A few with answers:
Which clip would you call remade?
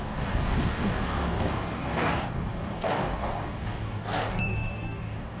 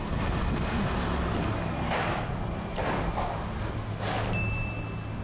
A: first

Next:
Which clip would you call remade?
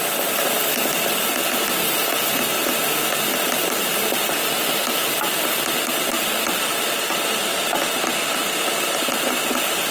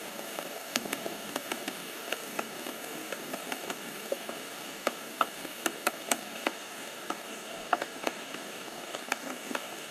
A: second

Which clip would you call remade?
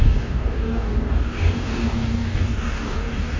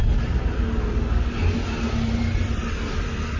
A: first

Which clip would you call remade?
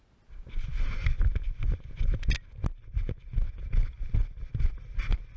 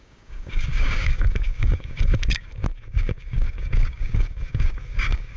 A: second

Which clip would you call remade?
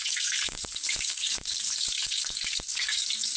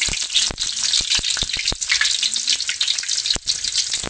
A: first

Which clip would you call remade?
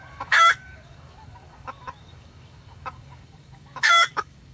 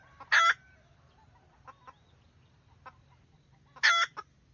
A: first